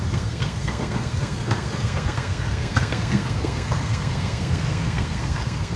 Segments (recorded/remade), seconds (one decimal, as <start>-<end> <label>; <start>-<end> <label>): 0.0-5.8 remade